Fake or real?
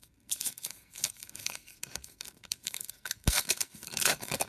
fake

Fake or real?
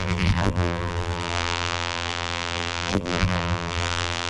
fake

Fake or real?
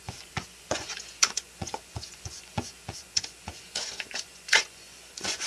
fake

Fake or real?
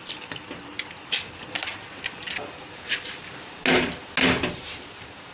real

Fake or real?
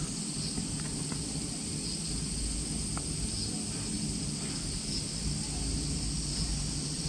real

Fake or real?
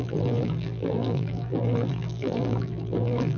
fake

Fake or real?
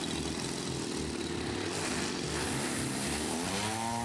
real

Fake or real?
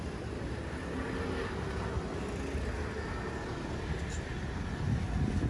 real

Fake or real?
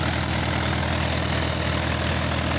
real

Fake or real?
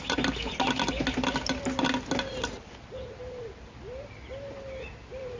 real